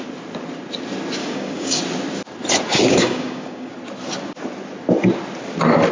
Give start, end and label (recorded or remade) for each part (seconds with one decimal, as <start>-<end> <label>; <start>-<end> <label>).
0.0-1.2 recorded; 1.2-1.8 remade; 1.8-2.7 recorded; 2.7-3.7 remade; 3.7-5.9 recorded